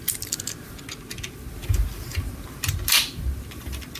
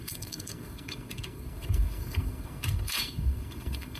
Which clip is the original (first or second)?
first